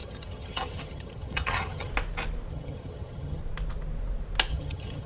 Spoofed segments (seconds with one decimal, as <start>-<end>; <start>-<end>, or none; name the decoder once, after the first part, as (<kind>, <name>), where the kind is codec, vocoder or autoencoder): 0.0-1.9 (vocoder, HiFi-GAN); 2.5-3.4; 4.5-5.1